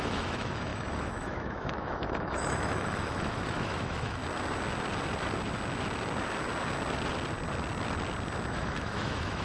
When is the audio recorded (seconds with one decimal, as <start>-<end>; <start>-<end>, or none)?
4.2-8.5